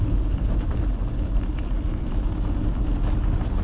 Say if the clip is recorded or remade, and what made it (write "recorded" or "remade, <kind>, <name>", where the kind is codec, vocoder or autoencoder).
recorded